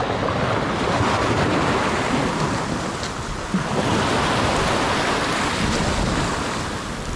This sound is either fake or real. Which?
real